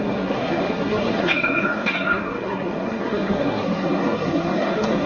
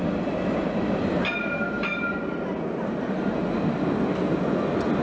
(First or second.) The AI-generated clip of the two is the first